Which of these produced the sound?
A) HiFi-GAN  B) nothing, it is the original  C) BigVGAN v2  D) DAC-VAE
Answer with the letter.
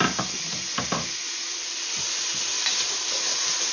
B